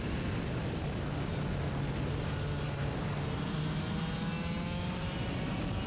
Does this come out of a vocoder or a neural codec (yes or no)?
no